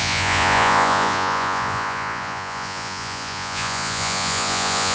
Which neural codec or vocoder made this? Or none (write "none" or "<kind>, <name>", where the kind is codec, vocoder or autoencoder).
vocoder, Vocos